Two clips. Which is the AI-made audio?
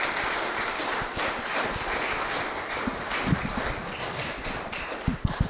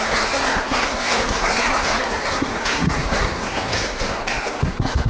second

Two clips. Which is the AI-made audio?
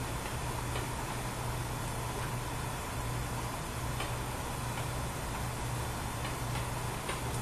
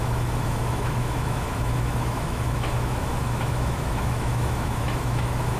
second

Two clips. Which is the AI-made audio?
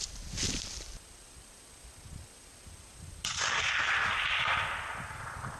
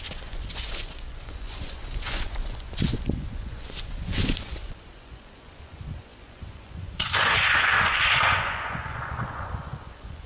second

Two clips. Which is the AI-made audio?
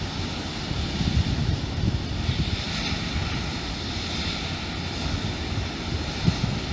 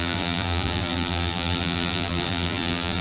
second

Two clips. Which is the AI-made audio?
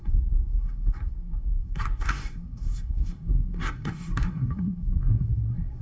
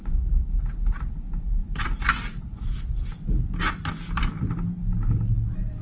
first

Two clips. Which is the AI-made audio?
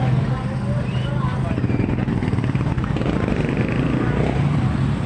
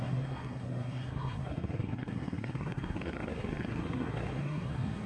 second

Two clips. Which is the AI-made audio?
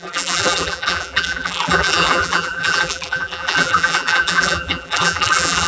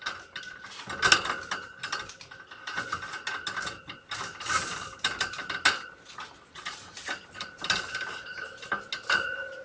first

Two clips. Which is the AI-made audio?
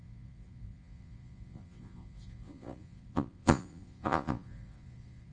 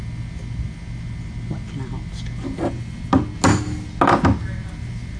first